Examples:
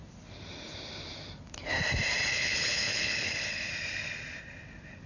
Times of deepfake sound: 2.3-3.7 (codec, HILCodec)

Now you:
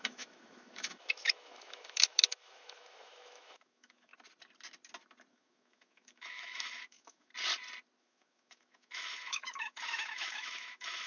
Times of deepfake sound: 0.0-4.1 (autoencoder, DAC-VAE); 5.3-7.3; 8.0-11.1